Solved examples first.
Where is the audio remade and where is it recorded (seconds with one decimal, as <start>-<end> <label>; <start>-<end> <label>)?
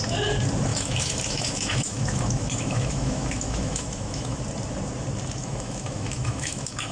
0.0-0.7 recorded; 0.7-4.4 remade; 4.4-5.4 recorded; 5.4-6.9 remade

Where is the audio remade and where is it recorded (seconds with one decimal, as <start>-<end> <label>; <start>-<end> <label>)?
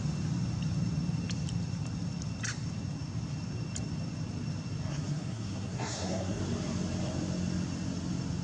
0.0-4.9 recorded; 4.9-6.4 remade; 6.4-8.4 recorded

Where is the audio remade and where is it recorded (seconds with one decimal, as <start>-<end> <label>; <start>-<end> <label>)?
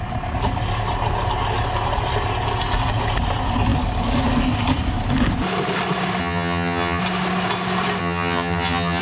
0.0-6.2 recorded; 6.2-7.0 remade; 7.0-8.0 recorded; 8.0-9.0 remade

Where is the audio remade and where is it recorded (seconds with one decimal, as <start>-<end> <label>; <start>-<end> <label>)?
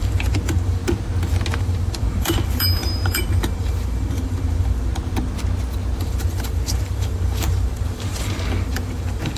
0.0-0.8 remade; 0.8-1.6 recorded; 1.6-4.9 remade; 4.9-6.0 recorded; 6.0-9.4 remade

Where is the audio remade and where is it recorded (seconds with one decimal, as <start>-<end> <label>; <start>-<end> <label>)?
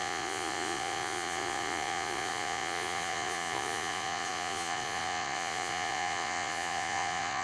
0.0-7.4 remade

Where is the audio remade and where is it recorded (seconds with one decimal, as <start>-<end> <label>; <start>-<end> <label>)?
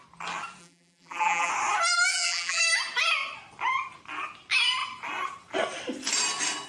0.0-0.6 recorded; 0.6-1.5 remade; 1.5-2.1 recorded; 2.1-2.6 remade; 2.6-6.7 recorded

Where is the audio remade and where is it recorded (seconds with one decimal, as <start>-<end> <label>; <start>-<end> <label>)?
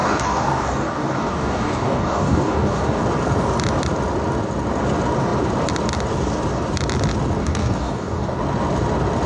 0.0-3.0 remade; 3.0-7.4 recorded; 7.4-8.4 remade; 8.4-9.3 recorded